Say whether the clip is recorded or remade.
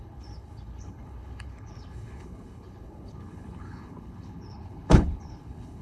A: remade